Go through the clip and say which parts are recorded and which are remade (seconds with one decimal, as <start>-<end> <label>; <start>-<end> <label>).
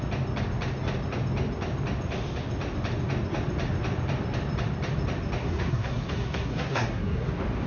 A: 0.0-5.4 recorded; 5.4-7.3 remade; 7.3-7.7 recorded